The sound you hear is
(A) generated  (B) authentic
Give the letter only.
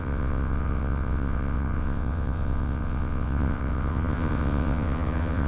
A